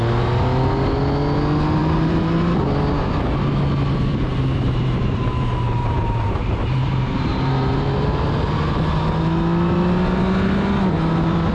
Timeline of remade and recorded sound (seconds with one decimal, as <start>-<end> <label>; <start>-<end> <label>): 0.0-1.8 recorded; 1.8-2.6 remade; 2.6-4.1 recorded; 4.1-8.7 remade; 8.7-11.5 recorded